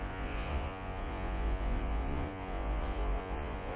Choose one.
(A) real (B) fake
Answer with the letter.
B